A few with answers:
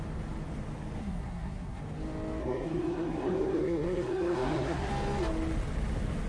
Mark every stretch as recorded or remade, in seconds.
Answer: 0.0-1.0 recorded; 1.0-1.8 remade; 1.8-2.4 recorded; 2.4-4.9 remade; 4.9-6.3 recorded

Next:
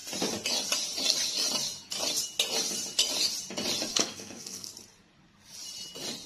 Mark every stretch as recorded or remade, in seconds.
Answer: 0.0-3.9 recorded; 3.9-4.7 remade; 4.7-6.3 recorded

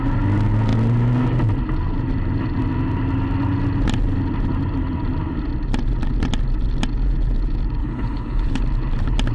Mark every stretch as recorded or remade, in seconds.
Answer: 0.0-7.8 recorded; 7.8-8.6 remade; 8.6-9.3 recorded

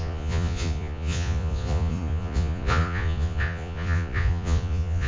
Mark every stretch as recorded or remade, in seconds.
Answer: 0.0-5.1 remade

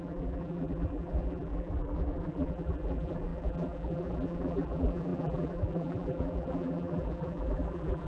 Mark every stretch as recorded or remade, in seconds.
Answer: 0.0-8.1 remade

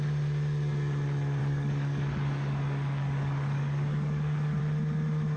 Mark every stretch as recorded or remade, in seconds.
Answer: 0.0-1.4 recorded; 1.4-4.6 remade; 4.6-5.4 recorded

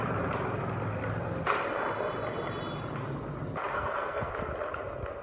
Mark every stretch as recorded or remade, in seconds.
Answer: 0.0-3.7 recorded; 3.7-4.3 remade; 4.3-5.2 recorded

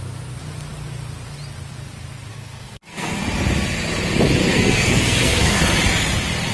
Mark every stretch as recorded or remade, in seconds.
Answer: 0.0-2.3 recorded; 2.3-3.2 remade; 3.2-4.4 recorded; 4.4-5.6 remade; 5.6-6.5 recorded